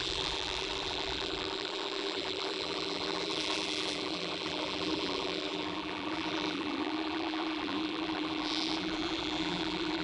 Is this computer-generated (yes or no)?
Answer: yes